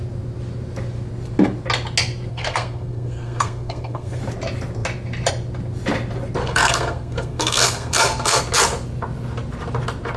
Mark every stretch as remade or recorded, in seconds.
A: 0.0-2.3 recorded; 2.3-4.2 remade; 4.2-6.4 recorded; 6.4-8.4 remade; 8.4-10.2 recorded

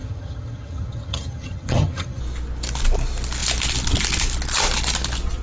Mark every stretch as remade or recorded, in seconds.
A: 0.0-2.2 remade; 2.2-5.4 recorded

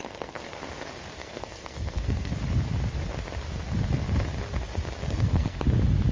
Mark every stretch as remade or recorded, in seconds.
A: 0.0-0.6 remade; 0.6-1.2 recorded; 1.2-2.3 remade; 2.3-5.0 recorded; 5.0-5.6 remade; 5.6-6.1 recorded

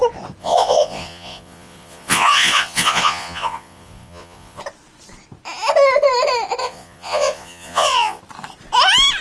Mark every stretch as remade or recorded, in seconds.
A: 0.0-0.4 recorded; 0.4-4.6 remade; 4.6-6.6 recorded; 6.6-8.2 remade; 8.2-9.2 recorded

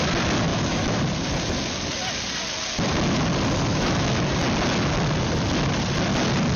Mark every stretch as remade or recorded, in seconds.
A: 0.0-0.5 recorded; 0.5-1.0 remade; 1.0-3.7 recorded; 3.7-4.3 remade; 4.3-6.6 recorded